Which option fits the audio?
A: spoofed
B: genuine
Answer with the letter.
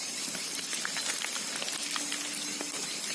B